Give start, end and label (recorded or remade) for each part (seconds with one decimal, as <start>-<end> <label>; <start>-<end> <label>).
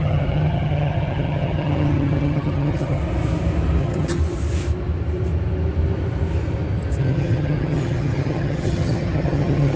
0.0-3.0 remade; 3.0-3.8 recorded; 3.8-4.2 remade; 4.2-7.0 recorded; 7.0-9.8 remade